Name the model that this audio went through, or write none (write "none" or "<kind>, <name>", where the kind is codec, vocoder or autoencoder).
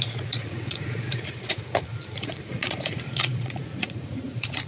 vocoder, Vocos